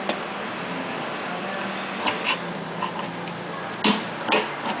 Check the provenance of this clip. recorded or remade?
recorded